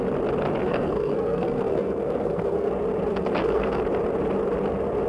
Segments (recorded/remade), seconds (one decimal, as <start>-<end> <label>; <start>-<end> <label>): 0.0-0.6 recorded; 0.6-2.7 remade; 2.7-3.1 recorded; 3.1-3.8 remade; 3.8-5.1 recorded